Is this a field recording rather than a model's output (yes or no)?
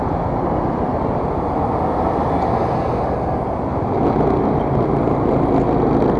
yes